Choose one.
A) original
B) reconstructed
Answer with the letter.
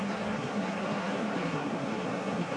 B